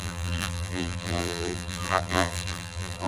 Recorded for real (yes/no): no